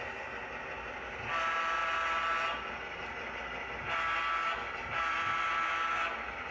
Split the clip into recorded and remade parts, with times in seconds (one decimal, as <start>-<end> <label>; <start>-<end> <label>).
0.0-6.5 recorded